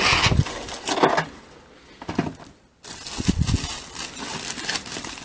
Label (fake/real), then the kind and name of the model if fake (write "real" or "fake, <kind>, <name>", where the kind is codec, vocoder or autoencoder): real